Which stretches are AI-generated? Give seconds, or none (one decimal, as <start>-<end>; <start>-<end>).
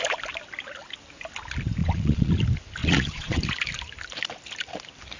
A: 1.8-2.3; 2.8-3.4